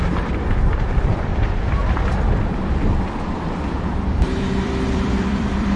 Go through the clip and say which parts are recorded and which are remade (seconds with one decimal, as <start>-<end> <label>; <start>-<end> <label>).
0.0-1.3 remade; 1.3-3.6 recorded; 3.6-5.8 remade